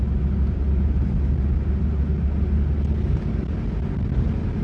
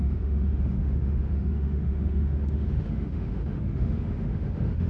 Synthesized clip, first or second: second